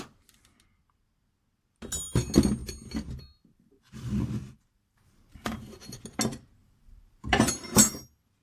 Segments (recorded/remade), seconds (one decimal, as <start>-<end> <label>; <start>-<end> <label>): 0.0-2.6 recorded; 2.6-6.0 remade; 6.0-6.6 recorded; 6.6-8.0 remade; 8.0-8.4 recorded